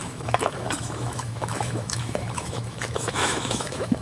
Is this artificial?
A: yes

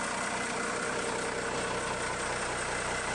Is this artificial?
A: no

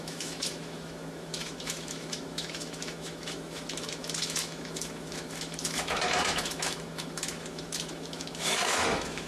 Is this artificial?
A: yes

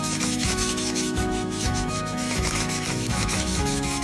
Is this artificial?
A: yes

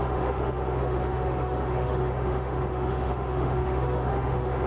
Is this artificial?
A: yes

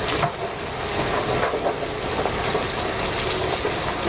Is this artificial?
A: no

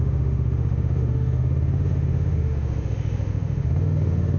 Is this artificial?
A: yes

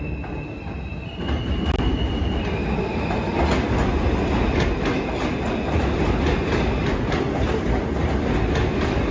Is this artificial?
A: no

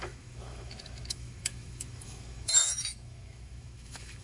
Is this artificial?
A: yes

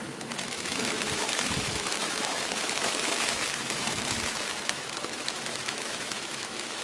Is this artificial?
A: yes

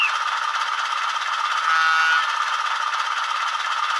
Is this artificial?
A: no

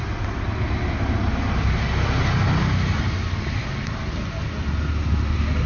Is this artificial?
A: no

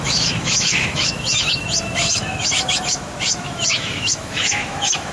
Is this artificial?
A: yes